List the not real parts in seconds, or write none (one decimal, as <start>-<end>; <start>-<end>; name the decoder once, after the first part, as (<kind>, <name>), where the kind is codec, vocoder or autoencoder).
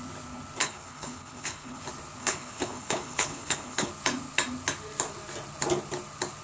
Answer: 0.6-1.8 (codec, HILCodec); 2.2-3.9